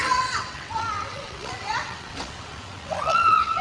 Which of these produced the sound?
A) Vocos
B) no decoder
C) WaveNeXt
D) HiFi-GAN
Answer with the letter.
C